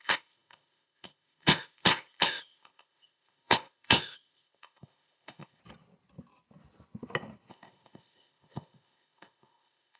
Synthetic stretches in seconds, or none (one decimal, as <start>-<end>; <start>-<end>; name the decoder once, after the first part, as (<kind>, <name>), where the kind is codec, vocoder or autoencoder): 0.0-5.6 (codec, ZipCodec); 7.5-10.0